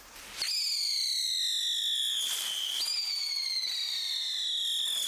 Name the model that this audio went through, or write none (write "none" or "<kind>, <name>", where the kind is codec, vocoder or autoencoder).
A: none